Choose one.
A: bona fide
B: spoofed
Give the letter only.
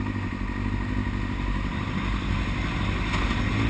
A